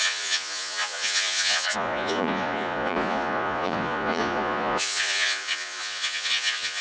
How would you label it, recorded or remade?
remade